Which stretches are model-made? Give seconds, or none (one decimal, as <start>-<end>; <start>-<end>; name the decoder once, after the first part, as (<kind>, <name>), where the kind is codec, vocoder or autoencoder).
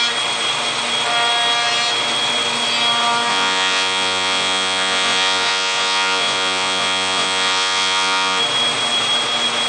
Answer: 3.3-8.4 (vocoder, Vocos)